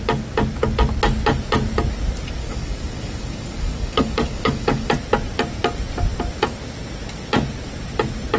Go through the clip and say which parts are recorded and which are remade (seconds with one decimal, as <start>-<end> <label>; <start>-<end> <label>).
0.0-2.4 recorded; 2.4-4.9 remade; 4.9-8.4 recorded